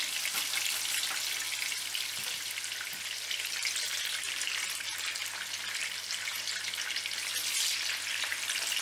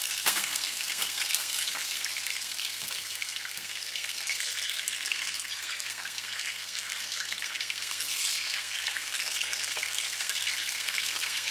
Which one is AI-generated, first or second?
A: second